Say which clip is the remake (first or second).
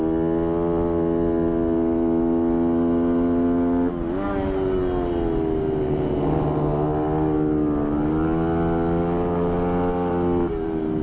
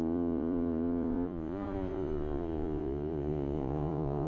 second